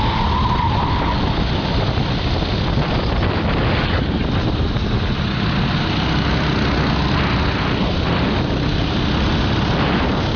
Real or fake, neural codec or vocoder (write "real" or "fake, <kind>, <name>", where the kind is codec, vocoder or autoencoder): real